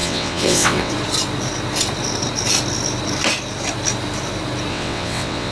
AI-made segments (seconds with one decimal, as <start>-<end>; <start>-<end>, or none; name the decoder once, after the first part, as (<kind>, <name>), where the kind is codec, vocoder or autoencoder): 0.0-0.9 (vocoder, WaveNeXt); 4.7-5.5